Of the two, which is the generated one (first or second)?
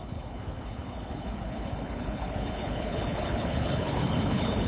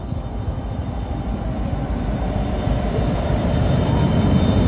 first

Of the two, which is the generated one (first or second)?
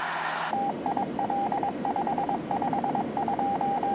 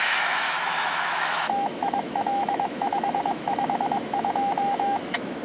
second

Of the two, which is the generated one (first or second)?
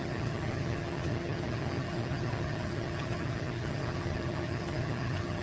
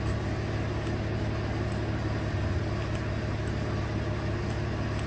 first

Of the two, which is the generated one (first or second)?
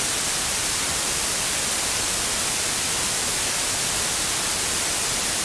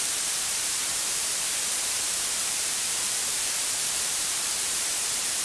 second